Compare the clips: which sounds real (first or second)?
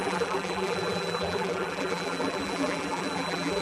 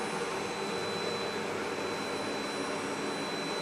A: second